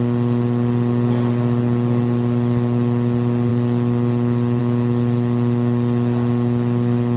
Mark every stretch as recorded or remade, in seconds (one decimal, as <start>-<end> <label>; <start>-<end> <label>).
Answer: 0.0-7.2 recorded